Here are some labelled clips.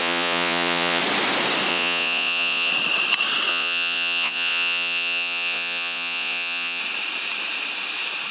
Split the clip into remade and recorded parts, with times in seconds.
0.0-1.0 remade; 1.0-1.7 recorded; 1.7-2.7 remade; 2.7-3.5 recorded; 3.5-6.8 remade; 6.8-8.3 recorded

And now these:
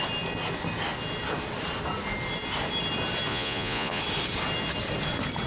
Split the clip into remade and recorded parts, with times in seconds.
0.0-3.3 recorded; 3.3-4.0 remade; 4.0-5.5 recorded

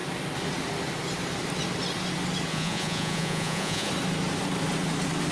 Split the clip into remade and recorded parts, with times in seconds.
0.0-2.5 recorded; 2.5-3.9 remade; 3.9-5.3 recorded

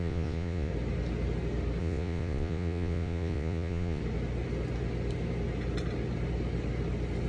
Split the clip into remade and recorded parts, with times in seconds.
0.0-0.7 remade; 0.7-1.8 recorded; 1.8-4.0 remade; 4.0-7.3 recorded

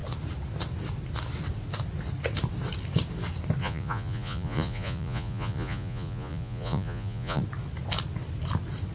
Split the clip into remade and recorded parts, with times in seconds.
0.0-3.6 recorded; 3.6-7.4 remade; 7.4-8.9 recorded

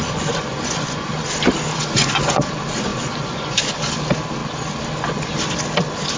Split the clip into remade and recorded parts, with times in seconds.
0.0-1.1 remade; 1.1-1.7 recorded; 1.7-2.5 remade; 2.5-2.9 recorded; 2.9-3.6 remade; 3.6-6.2 recorded